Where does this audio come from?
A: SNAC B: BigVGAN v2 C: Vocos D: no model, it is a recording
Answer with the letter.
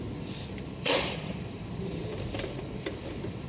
B